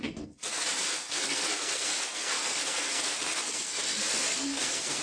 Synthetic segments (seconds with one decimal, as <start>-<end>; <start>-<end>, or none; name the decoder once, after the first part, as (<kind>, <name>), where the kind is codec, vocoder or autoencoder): 0.0-5.0 (codec, SNAC)